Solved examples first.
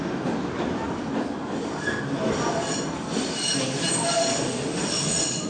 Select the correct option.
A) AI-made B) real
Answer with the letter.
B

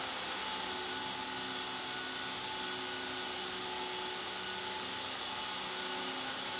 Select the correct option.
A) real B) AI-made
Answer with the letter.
A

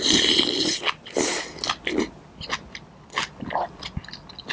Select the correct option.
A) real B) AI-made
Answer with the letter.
A